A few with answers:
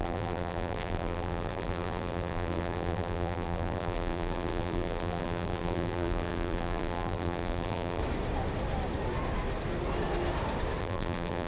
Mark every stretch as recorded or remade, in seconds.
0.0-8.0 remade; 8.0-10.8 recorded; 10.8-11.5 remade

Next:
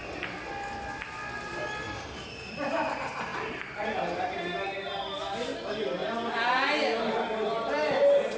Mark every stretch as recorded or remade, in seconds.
0.0-3.3 recorded; 3.3-5.0 remade; 5.0-8.4 recorded